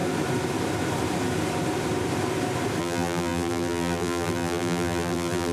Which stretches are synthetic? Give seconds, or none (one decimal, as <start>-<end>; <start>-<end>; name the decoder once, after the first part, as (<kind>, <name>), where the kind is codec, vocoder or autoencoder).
2.8-5.5 (vocoder, BigVGAN v2)